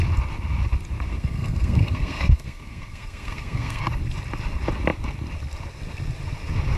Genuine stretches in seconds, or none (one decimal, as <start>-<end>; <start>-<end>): 0.0-1.1; 3.8-6.8